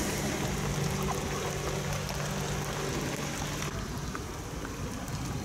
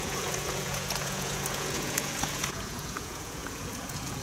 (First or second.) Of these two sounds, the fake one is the second